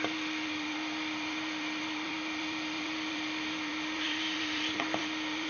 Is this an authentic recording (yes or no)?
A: no